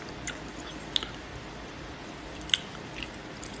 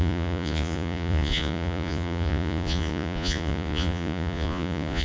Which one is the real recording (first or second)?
first